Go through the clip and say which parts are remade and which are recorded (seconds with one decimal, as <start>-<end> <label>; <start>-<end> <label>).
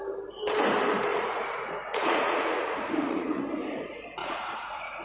0.0-1.1 recorded; 1.1-3.4 remade; 3.4-4.2 recorded; 4.2-5.0 remade